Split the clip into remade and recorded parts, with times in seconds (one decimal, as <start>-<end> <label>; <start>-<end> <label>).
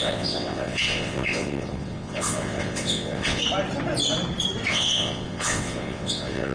0.0-3.4 remade; 3.4-4.7 recorded; 4.7-6.5 remade